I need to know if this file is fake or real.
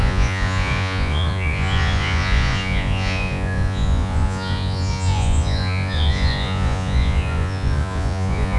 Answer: fake